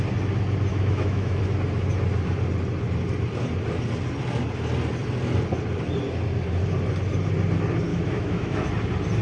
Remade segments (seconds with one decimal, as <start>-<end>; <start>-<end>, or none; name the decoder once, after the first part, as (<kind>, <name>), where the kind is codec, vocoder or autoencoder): 0.7-1.4 (autoencoder, DAC-VAE); 7.9-8.7